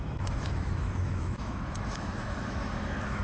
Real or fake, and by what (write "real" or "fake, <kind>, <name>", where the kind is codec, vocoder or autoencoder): fake, autoencoder, DAC-VAE